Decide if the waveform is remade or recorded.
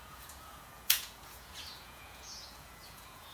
remade